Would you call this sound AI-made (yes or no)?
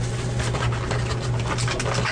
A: no